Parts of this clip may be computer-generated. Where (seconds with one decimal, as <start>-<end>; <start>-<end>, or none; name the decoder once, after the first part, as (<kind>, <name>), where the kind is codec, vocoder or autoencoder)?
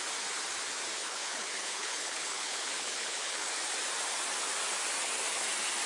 1.0-3.5 (codec, HILCodec)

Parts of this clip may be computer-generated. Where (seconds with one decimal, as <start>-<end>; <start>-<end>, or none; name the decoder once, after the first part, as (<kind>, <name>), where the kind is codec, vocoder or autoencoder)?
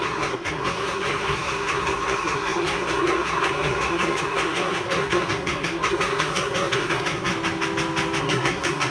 0.0-7.3 (codec, SNAC); 8.2-8.9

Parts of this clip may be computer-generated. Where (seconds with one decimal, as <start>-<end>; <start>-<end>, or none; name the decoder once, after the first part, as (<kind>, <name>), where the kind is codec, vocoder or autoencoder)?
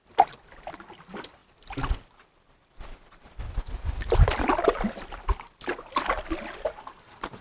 none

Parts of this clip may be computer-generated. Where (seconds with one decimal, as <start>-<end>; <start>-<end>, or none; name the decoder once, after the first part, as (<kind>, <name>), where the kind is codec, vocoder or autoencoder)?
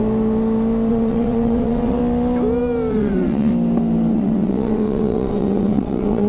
0.9-2.0 (vocoder, WaveNeXt); 2.9-3.5; 4.1-6.3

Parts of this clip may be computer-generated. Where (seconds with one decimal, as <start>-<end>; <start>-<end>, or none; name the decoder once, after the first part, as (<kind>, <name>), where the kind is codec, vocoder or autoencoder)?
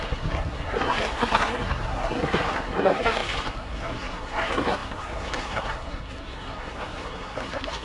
0.0-7.8 (codec, SNAC)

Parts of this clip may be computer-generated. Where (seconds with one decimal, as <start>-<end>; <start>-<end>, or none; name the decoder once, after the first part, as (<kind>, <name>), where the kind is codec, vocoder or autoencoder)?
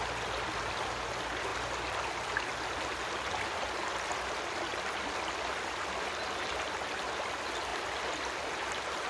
none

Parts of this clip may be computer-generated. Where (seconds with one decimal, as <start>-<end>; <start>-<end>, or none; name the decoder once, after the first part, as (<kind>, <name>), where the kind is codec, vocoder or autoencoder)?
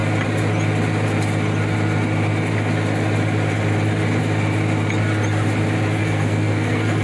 6.0-7.0 (codec, SNAC)